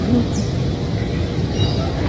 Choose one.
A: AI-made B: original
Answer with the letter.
B